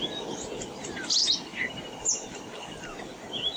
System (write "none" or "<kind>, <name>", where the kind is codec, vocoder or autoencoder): none